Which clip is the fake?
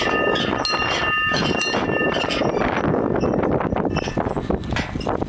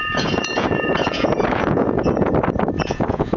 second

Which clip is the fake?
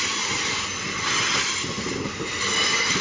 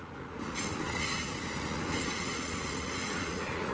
second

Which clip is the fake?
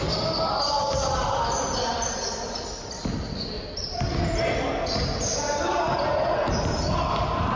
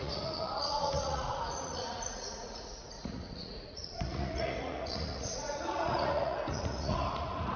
second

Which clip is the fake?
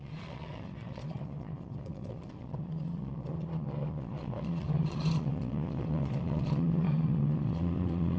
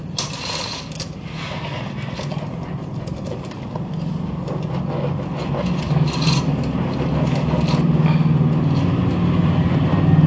first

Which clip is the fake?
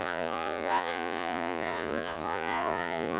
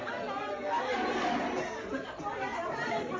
first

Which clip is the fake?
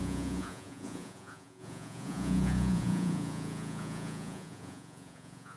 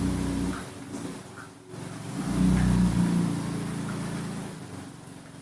first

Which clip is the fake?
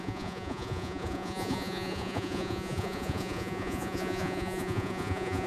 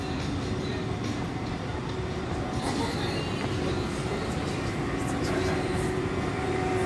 first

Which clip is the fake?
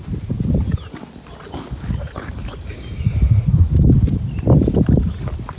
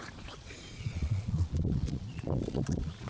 second